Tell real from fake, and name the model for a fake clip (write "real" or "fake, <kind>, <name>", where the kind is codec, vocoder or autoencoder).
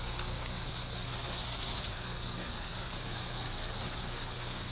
fake, codec, SNAC